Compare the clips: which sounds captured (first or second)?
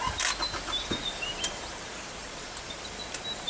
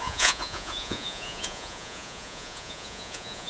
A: first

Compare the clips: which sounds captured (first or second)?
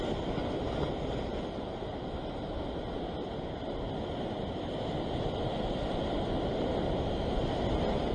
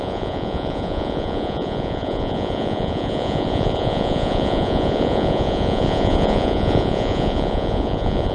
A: first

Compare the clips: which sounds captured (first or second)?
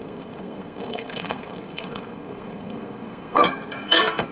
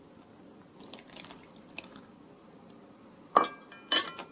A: second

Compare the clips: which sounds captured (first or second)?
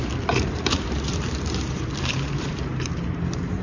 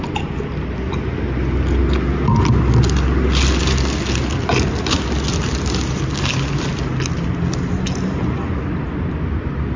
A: second